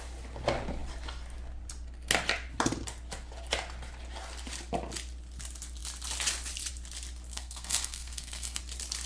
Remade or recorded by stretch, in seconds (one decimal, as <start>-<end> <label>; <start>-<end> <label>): 0.0-7.3 recorded; 7.3-8.6 remade; 8.6-9.1 recorded